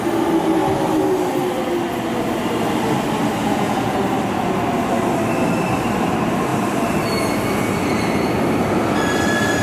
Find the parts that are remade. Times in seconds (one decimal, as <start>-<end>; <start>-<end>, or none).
3.4-4.0